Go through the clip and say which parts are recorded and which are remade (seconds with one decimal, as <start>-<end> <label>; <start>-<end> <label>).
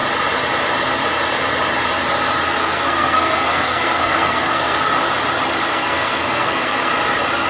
0.0-2.6 recorded; 2.6-4.9 remade; 4.9-5.7 recorded; 5.7-6.9 remade; 6.9-7.5 recorded